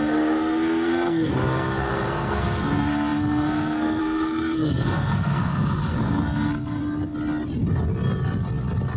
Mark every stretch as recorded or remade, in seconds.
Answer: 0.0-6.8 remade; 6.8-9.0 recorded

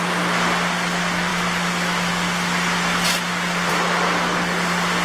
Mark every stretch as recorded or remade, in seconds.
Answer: 0.0-5.0 recorded

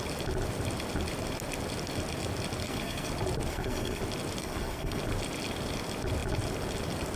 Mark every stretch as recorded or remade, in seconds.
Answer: 0.0-2.6 recorded; 2.6-3.1 remade; 3.1-3.5 recorded; 3.5-4.0 remade; 4.0-4.4 recorded; 4.4-5.0 remade; 5.0-7.2 recorded

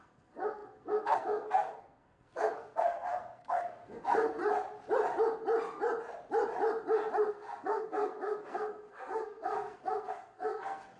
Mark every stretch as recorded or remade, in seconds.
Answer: 0.0-4.4 remade; 4.4-7.3 recorded; 7.3-11.0 remade

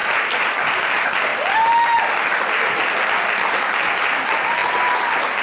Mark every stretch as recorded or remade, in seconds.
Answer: 0.0-5.4 recorded

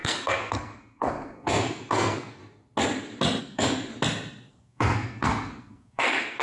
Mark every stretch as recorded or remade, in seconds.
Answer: 0.0-2.4 remade; 2.4-3.4 recorded; 3.4-3.9 remade; 3.9-4.5 recorded; 4.5-6.4 remade

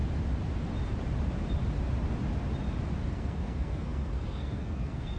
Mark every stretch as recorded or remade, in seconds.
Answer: 0.0-3.1 recorded; 3.1-5.2 remade